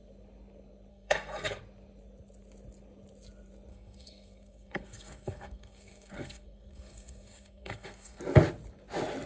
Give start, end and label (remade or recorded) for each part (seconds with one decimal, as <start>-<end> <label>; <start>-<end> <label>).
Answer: 0.0-0.9 recorded; 0.9-1.6 remade; 1.6-3.7 recorded; 3.7-8.2 remade; 8.2-9.3 recorded